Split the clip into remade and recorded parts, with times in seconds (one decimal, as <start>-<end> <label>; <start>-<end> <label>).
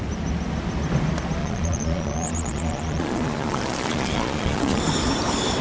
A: 0.0-1.4 recorded; 1.4-4.8 remade; 4.8-5.6 recorded